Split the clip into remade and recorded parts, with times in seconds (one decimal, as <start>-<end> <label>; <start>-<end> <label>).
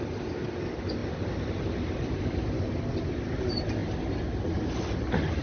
0.0-5.4 recorded